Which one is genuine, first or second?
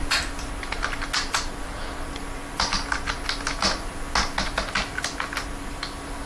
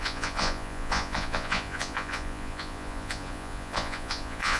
first